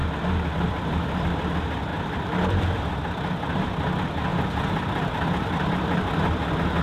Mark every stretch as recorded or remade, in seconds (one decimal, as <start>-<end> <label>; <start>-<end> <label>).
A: 0.0-1.3 remade; 1.3-1.9 recorded; 1.9-2.9 remade; 2.9-4.3 recorded; 4.3-6.0 remade; 6.0-6.8 recorded